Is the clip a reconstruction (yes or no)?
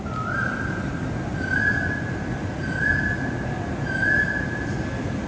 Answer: no